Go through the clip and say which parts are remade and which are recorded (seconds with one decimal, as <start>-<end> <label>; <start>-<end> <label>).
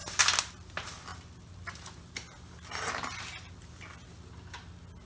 0.0-5.1 recorded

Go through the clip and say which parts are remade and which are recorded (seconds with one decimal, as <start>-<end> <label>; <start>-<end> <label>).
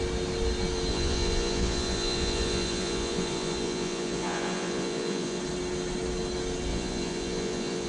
0.0-0.9 recorded; 0.9-5.4 remade; 5.4-6.7 recorded; 6.7-7.9 remade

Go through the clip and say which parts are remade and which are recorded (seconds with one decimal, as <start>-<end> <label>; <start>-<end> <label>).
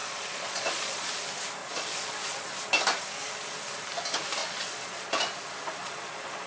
0.0-1.2 remade; 1.2-1.6 recorded; 1.6-2.5 remade; 2.5-4.4 recorded; 4.4-5.1 remade; 5.1-5.8 recorded; 5.8-6.5 remade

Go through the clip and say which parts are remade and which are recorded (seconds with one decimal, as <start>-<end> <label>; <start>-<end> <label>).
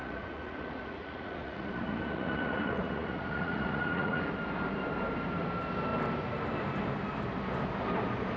0.0-4.2 remade; 4.2-8.4 recorded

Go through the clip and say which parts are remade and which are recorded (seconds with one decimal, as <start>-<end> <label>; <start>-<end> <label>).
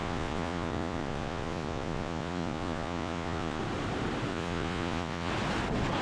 0.0-3.6 remade; 3.6-4.3 recorded; 4.3-5.3 remade; 5.3-6.0 recorded